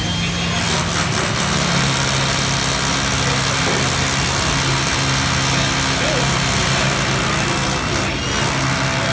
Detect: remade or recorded recorded